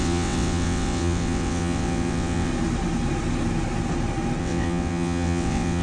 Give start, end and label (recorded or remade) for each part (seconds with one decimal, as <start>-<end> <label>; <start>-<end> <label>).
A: 0.0-2.5 remade; 2.5-4.4 recorded; 4.4-5.8 remade